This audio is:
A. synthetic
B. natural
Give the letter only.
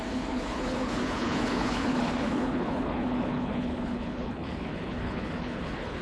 A